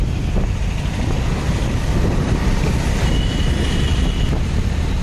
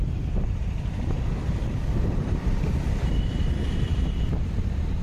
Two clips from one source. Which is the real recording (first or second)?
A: first